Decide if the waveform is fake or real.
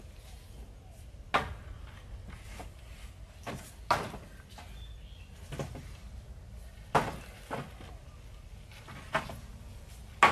real